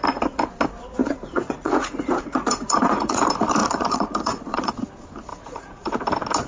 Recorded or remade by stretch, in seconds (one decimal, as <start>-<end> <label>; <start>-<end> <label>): 0.0-1.0 recorded; 1.0-3.2 remade; 3.2-3.6 recorded; 3.6-4.7 remade; 4.7-5.3 recorded; 5.3-6.0 remade; 6.0-6.5 recorded